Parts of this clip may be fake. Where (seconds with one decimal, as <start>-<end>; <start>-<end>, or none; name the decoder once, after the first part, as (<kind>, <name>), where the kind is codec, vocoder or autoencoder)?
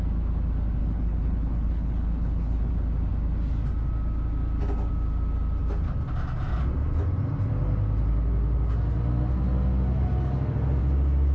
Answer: 0.8-2.7 (codec, HILCodec)